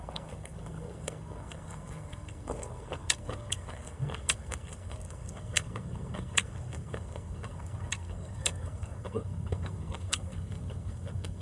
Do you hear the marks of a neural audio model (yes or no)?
yes